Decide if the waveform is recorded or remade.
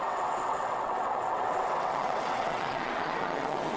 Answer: remade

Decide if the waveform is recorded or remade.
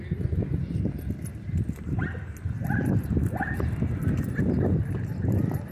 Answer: recorded